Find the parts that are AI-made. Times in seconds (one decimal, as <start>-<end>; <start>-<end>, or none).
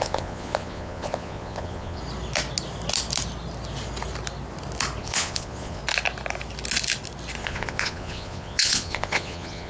0.0-2.0; 5.0-5.8; 7.4-9.7